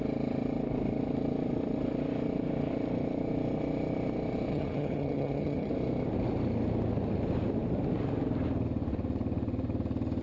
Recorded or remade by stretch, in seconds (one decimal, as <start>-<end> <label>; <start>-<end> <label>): 0.0-4.5 recorded; 4.5-5.7 remade; 5.7-10.2 recorded